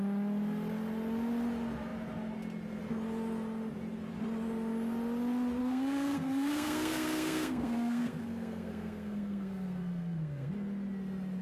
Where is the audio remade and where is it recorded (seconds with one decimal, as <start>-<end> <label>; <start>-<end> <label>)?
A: 0.0-5.6 recorded; 5.6-10.5 remade; 10.5-11.4 recorded